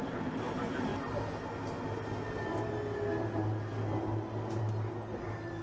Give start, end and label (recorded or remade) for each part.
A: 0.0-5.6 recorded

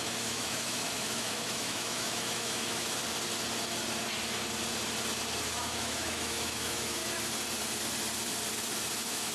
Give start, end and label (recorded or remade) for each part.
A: 0.0-3.0 remade; 3.0-5.5 recorded; 5.5-7.0 remade; 7.0-8.9 recorded; 8.9-9.3 remade

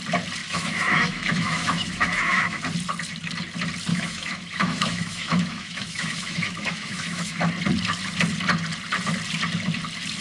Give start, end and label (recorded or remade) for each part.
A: 0.0-0.4 recorded; 0.4-2.6 remade; 2.6-3.9 recorded; 3.9-7.4 remade; 7.4-10.2 recorded

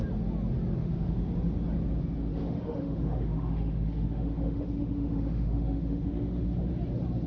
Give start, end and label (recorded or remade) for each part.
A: 0.0-0.8 recorded; 0.8-1.3 remade; 1.3-2.3 recorded; 2.3-6.7 remade; 6.7-7.3 recorded

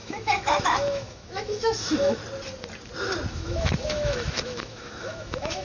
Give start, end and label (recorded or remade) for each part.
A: 0.0-2.2 remade; 2.2-3.3 recorded; 3.3-5.6 remade

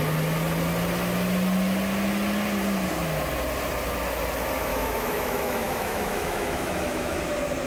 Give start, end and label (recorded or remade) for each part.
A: 0.0-4.7 recorded; 4.7-7.2 remade; 7.2-7.7 recorded

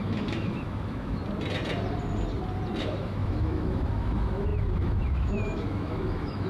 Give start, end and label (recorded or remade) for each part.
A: 0.0-1.2 remade; 1.2-2.8 recorded; 2.8-6.5 remade